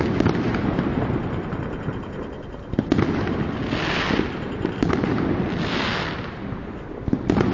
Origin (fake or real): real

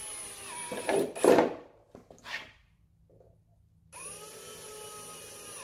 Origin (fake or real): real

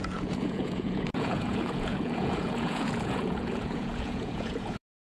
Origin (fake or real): fake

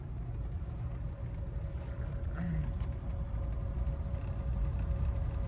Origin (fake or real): real